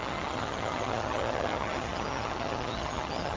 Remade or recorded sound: remade